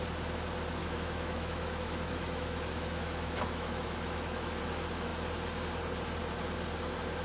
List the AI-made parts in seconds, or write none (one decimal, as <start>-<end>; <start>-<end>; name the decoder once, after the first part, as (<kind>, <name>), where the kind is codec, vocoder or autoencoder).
0.8-4.6 (autoencoder, DAC-VAE)